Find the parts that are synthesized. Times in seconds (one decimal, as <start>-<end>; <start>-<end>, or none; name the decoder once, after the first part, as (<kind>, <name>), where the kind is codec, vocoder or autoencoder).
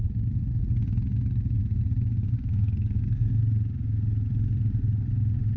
2.2-3.4 (codec, SNAC)